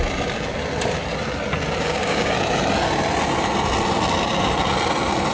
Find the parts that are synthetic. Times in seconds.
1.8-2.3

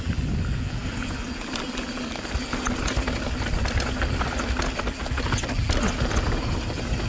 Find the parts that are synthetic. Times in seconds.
none

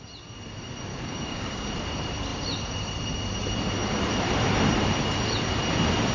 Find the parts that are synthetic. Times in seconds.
0.9-1.7

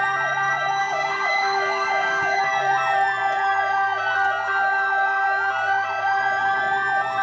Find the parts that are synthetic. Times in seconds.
0.8-2.4

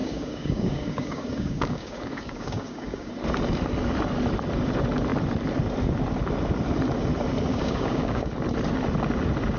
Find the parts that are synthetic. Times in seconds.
0.0-3.1; 7.5-8.3

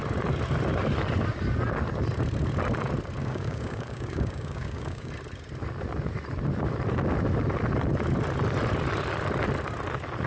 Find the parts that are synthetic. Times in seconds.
3.2-5.1

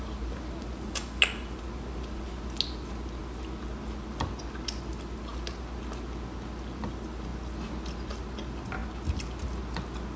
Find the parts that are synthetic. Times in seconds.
none